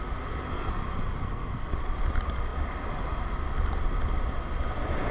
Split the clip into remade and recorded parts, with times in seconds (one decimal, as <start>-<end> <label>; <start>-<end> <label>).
0.0-1.2 recorded; 1.2-1.7 remade; 1.7-5.1 recorded